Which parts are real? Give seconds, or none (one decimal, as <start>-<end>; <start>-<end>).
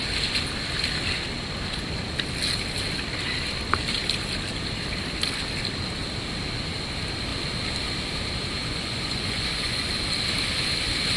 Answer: 0.0-8.6; 9.9-11.2